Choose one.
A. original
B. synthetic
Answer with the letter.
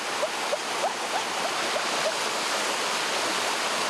A